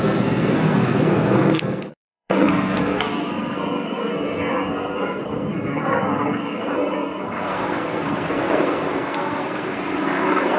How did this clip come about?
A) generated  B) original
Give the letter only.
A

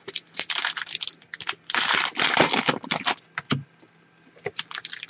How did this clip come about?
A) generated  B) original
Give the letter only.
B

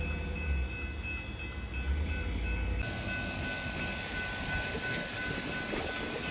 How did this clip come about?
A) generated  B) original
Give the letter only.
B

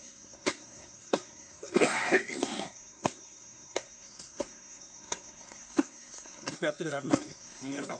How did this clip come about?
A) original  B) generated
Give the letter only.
B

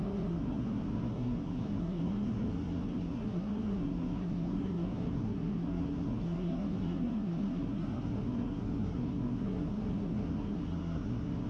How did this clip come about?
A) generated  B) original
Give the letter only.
A